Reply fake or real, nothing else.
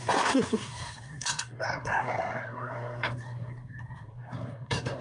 fake